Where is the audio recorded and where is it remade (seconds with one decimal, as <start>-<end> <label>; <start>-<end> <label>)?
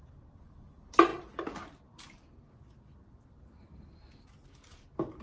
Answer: 0.0-5.2 recorded